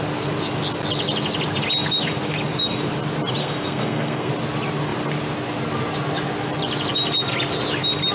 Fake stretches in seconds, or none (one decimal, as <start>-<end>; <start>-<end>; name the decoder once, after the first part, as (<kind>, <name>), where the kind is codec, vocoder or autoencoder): 3.4-4.3 (codec, SNAC)